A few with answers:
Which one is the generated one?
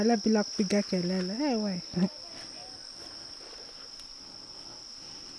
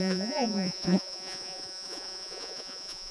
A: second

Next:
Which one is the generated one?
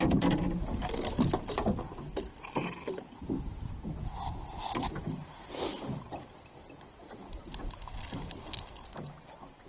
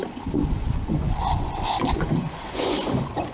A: second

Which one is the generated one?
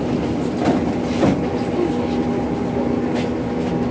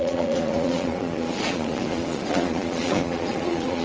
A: second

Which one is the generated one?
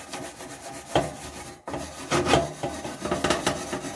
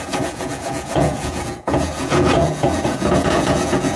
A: second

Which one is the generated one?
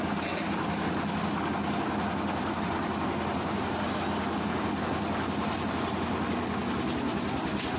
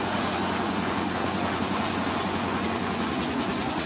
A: second